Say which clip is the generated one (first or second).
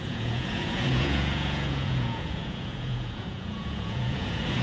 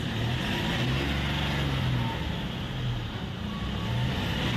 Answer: first